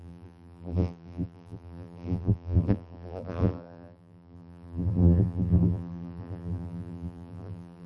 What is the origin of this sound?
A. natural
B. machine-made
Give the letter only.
B